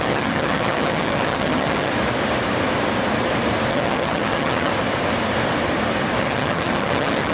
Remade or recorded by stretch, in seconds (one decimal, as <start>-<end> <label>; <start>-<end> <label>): 0.0-1.9 remade; 1.9-3.7 recorded; 3.7-4.7 remade; 4.7-6.2 recorded; 6.2-7.3 remade